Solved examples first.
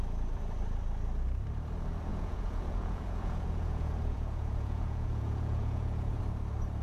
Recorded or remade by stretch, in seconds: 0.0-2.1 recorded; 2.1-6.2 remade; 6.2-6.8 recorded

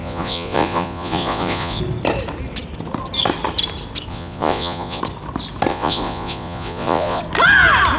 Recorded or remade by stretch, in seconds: 0.0-1.8 remade; 1.8-4.1 recorded; 4.1-5.0 remade; 5.0-5.7 recorded; 5.7-7.2 remade; 7.2-8.0 recorded